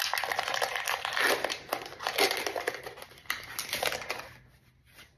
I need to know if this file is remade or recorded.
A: recorded